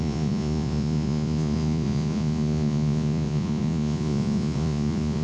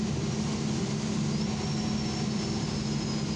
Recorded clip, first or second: second